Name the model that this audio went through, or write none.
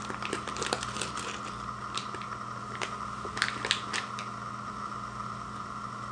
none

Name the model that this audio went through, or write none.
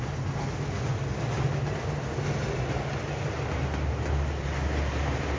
none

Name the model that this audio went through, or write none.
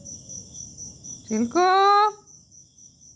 autoencoder, DAC-VAE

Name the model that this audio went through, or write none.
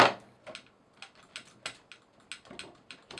none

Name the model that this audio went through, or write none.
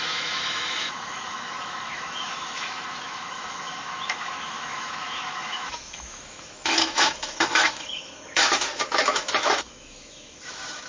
autoencoder, DAC-VAE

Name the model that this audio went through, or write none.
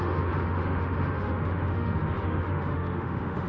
autoencoder, DAC-VAE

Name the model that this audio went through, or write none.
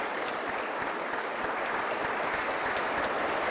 none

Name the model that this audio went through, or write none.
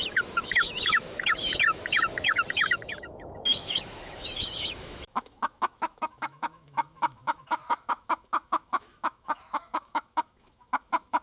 autoencoder, DAC-VAE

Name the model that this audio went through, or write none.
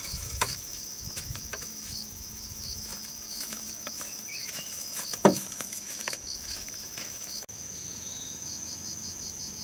autoencoder, DAC-VAE